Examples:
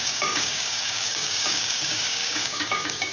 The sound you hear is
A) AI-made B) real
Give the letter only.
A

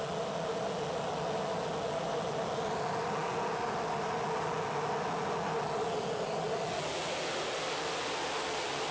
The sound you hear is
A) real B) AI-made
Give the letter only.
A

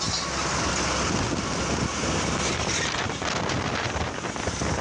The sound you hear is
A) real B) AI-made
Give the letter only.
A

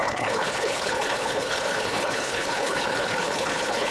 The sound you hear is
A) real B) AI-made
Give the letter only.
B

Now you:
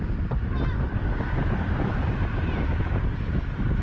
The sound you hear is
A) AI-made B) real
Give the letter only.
B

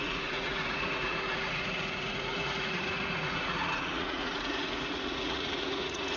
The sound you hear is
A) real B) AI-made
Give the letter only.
B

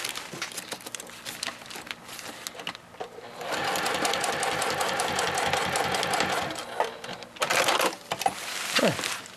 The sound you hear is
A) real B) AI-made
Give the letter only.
A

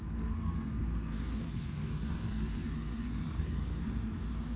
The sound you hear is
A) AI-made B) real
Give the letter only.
A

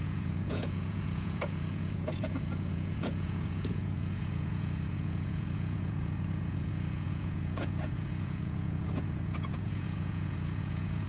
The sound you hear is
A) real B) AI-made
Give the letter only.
B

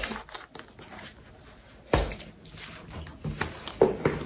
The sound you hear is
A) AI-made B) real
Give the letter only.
B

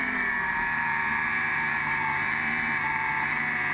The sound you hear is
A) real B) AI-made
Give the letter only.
B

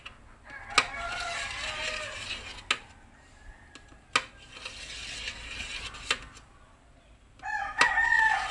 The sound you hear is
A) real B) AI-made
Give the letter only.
A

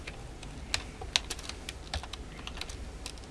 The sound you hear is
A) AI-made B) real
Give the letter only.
B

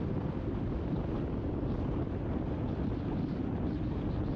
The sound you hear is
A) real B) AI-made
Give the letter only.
A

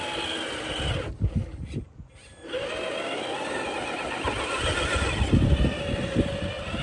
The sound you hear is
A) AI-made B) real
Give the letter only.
B